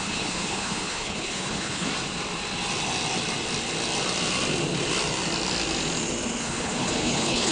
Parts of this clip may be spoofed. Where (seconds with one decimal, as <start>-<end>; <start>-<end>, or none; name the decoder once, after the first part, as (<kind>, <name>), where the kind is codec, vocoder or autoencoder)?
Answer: 0.0-1.9 (codec, HILCodec); 6.4-7.5

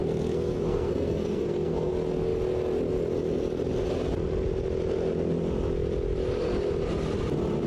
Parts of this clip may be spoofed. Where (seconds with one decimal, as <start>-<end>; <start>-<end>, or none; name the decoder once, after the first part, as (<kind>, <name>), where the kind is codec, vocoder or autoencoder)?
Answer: 0.0-1.9 (codec, SNAC)

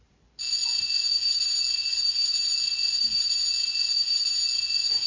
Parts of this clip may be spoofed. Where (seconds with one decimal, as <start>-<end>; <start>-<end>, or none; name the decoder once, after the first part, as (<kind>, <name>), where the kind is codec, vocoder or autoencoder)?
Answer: none

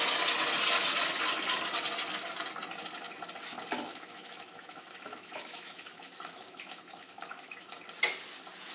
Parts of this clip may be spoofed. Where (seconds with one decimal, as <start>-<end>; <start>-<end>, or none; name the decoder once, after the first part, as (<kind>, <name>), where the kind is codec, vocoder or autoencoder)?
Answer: 3.9-7.8 (autoencoder, DAC-VAE)

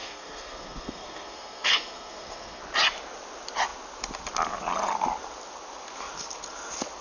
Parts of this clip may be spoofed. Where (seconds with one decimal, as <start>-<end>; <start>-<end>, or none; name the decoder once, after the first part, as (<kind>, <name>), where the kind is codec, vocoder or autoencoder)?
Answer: 0.0-2.6 (codec, SNAC)